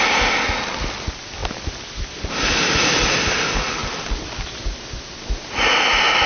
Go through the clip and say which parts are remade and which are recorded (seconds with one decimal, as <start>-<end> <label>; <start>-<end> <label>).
0.0-6.3 recorded